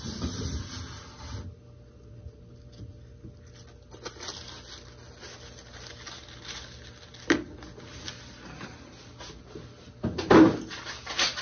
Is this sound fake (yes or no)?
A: no